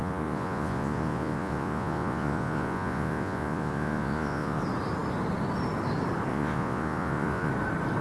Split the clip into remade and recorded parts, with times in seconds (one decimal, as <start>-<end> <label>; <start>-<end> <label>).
0.0-4.6 remade; 4.6-6.3 recorded; 6.3-7.5 remade; 7.5-8.0 recorded